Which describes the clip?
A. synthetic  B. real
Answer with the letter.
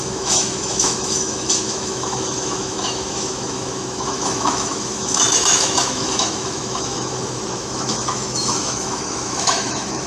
A